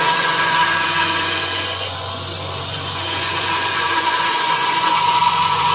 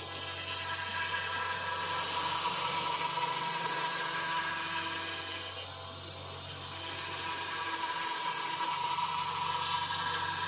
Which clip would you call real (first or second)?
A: second